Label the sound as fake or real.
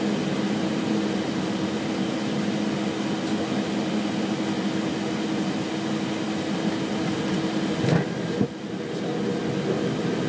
real